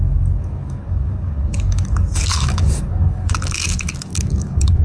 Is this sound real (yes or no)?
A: no